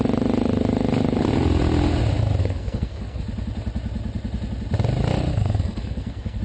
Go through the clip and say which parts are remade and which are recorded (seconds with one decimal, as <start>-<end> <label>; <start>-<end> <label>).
0.0-2.4 recorded; 2.4-3.2 remade; 3.2-5.3 recorded; 5.3-6.4 remade